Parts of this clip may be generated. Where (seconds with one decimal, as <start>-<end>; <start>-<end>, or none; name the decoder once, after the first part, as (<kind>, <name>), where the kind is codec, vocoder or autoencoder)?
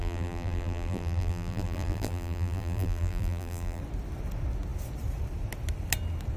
0.0-3.8 (vocoder, BigVGAN v2)